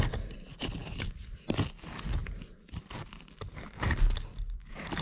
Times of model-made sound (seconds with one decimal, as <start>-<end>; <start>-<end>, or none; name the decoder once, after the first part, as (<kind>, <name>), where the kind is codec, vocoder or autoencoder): 2.2-5.0 (vocoder, BigVGAN v2)